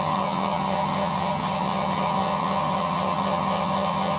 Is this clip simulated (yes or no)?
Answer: yes